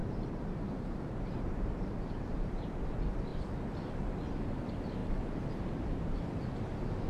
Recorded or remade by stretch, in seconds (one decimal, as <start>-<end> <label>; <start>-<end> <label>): 0.0-2.8 remade; 2.8-5.0 recorded; 5.0-5.8 remade; 5.8-7.1 recorded